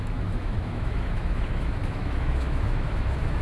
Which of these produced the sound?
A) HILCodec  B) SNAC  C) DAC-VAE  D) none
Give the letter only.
C